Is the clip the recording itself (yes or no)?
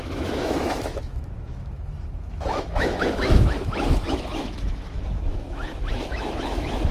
no